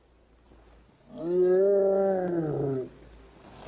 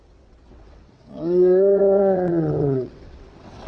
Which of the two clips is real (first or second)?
first